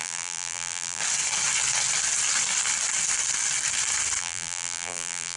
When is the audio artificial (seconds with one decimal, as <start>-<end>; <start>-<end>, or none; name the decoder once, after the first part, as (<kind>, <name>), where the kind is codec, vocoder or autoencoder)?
0.0-1.0 (vocoder, BigVGAN v2); 4.2-5.4